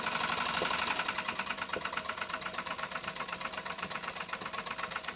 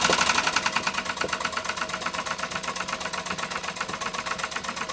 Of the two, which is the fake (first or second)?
first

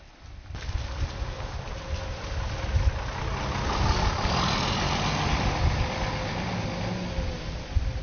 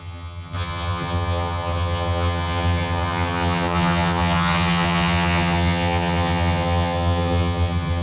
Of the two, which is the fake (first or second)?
second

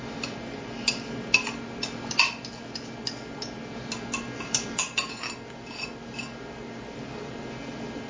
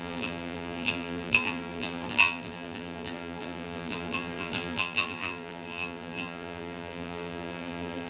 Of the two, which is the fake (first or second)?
second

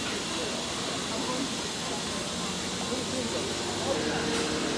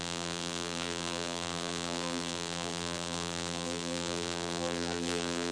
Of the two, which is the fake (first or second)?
second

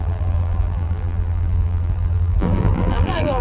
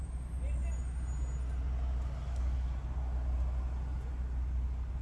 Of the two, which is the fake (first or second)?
first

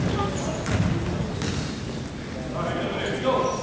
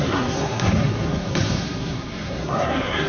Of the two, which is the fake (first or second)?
second